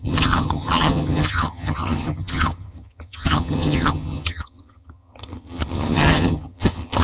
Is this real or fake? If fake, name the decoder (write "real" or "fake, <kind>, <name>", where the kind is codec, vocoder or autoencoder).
fake, vocoder, HiFi-GAN